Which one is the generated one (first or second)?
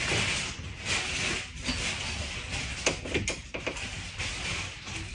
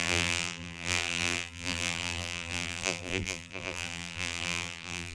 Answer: second